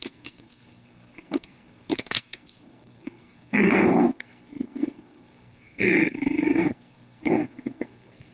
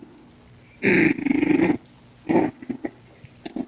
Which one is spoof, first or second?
first